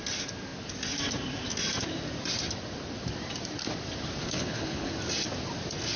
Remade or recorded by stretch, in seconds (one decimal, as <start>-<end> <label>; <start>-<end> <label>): 0.0-4.2 recorded; 4.2-4.9 remade; 4.9-6.0 recorded